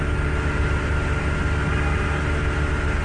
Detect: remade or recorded recorded